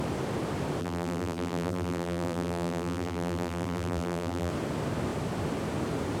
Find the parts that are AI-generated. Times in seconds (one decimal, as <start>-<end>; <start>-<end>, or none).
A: 0.8-4.5